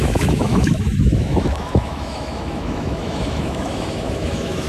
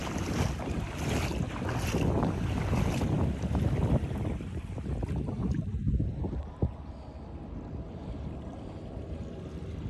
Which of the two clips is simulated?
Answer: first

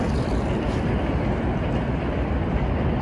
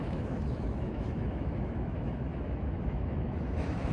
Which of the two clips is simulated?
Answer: second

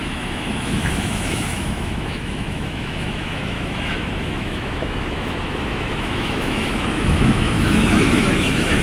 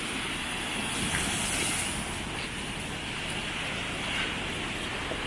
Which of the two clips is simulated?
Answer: first